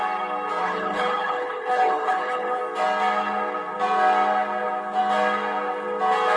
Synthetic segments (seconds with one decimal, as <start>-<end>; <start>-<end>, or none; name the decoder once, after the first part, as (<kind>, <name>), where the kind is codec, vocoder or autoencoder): 0.6-2.6 (codec, HILCodec)